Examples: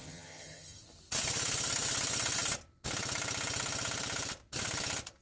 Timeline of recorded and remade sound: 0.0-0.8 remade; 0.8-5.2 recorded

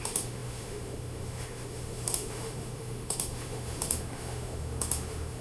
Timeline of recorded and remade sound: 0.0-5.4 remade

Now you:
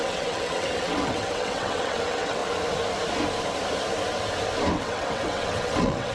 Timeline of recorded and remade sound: 0.0-2.4 remade; 2.4-4.7 recorded; 4.7-6.1 remade